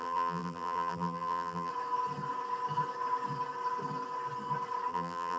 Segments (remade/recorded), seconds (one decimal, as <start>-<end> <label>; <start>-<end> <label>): 0.0-1.7 remade; 1.7-4.9 recorded; 4.9-5.4 remade